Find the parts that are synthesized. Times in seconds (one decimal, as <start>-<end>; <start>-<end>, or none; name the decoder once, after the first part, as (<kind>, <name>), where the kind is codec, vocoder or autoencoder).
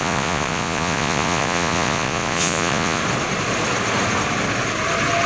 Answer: 0.0-3.0 (vocoder, Vocos)